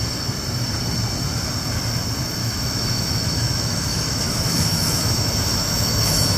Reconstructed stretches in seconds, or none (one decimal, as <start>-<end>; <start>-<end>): 2.4-6.4